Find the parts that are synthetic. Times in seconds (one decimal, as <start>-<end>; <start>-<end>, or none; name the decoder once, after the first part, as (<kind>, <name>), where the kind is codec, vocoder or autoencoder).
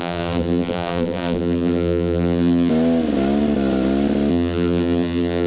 0.0-2.7 (vocoder, BigVGAN v2); 4.3-5.5